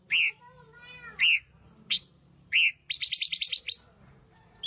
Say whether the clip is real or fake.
real